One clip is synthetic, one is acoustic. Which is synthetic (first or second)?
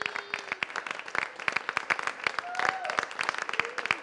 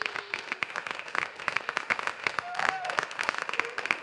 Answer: second